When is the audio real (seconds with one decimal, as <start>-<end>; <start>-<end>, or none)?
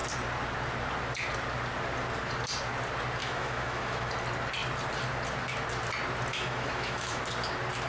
0.0-3.2; 4.1-6.3; 7.2-7.9